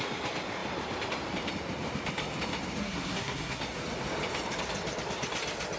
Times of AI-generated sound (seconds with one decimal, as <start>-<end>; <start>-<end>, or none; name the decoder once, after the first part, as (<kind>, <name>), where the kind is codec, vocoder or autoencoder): 2.8-3.6 (codec, SNAC)